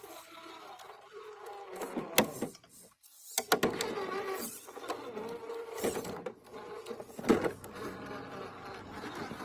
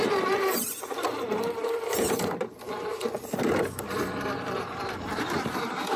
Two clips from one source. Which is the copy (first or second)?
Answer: second